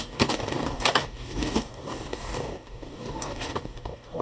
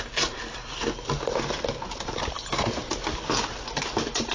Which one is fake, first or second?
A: first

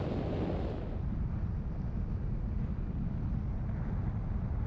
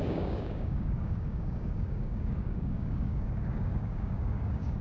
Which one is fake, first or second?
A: second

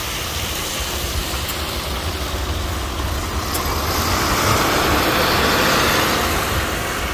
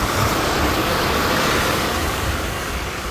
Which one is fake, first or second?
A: second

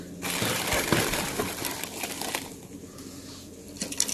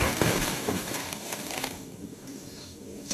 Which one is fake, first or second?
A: second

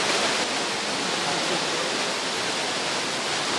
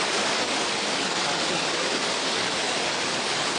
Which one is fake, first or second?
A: second